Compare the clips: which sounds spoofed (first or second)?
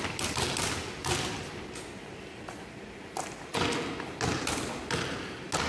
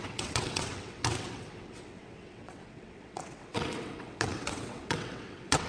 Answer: second